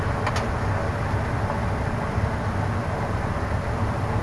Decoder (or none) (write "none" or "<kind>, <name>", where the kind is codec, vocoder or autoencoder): none